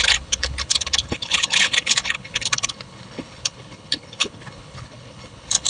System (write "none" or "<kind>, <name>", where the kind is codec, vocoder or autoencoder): codec, HILCodec